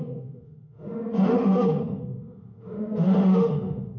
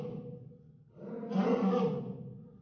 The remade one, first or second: first